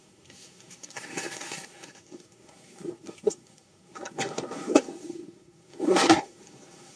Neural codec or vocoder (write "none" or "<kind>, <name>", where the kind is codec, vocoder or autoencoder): codec, SNAC